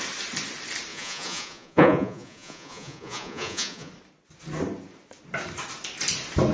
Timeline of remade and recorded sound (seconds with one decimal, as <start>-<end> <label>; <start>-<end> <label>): 0.0-0.9 recorded; 0.9-3.9 remade; 3.9-6.5 recorded

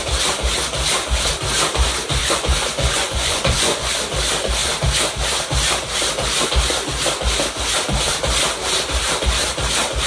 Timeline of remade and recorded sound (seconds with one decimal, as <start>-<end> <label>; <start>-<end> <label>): 0.0-2.2 recorded; 2.2-3.9 remade; 3.9-10.1 recorded

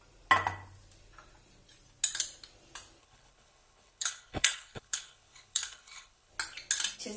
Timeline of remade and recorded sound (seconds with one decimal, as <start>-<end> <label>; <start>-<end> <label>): 0.0-3.0 recorded; 3.0-6.3 remade; 6.3-7.2 recorded

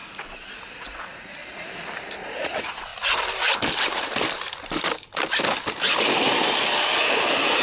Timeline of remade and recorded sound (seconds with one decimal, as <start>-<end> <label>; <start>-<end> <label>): 0.0-1.4 remade; 1.4-2.2 recorded; 2.2-2.9 remade; 2.9-7.6 recorded

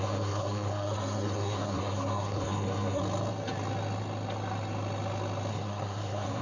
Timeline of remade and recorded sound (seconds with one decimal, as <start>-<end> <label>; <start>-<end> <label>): 0.0-3.0 remade; 3.0-5.5 recorded; 5.5-6.4 remade

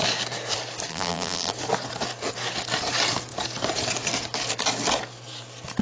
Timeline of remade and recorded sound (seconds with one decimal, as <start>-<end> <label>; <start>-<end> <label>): 0.0-0.9 recorded; 0.9-1.5 remade; 1.5-5.8 recorded

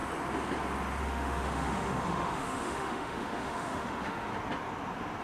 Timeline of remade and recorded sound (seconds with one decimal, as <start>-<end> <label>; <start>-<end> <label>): 0.0-1.0 recorded; 1.0-4.3 remade; 4.3-5.2 recorded

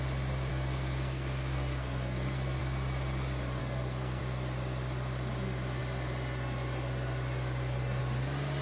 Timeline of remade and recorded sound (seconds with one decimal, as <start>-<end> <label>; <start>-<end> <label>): 0.0-0.5 recorded; 0.5-2.6 remade; 2.6-3.6 recorded; 3.6-4.2 remade; 4.2-8.6 recorded